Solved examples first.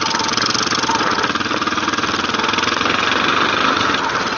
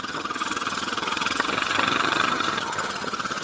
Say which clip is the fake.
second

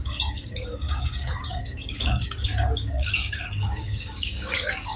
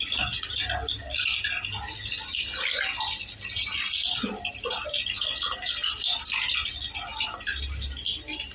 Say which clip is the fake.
first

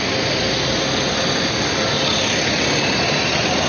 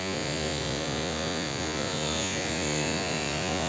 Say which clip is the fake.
second